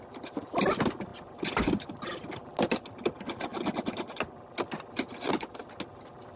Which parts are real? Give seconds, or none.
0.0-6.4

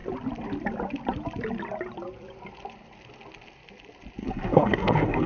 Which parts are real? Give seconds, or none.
0.0-4.2

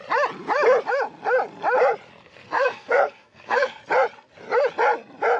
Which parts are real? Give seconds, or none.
0.0-2.2; 3.8-5.4

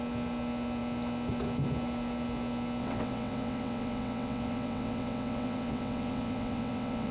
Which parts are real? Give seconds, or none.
0.0-2.8

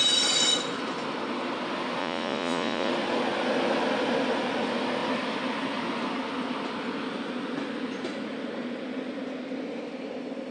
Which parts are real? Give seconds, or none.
0.0-2.0; 2.9-10.5

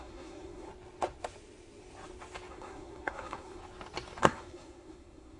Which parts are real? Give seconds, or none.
0.7-2.5; 3.6-4.2

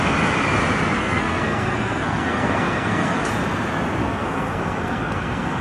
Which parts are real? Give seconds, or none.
0.0-1.0; 3.2-4.0